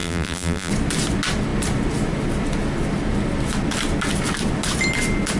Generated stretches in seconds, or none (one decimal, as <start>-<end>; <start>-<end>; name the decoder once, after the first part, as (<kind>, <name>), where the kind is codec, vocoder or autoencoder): 0.0-0.7 (vocoder, BigVGAN v2)